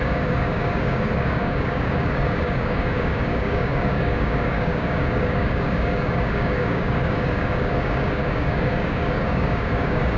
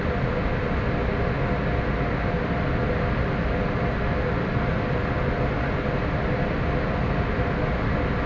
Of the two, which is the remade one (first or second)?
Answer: first